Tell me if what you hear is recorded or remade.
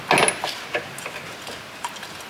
recorded